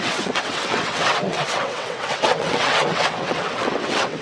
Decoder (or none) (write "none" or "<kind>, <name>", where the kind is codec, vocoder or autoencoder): vocoder, WaveNeXt